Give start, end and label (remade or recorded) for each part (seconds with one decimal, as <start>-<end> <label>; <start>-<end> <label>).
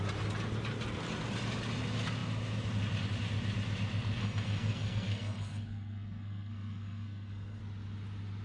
0.0-4.2 recorded; 4.2-7.6 remade; 7.6-8.4 recorded